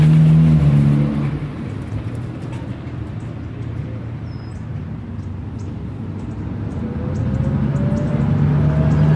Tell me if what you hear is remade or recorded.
recorded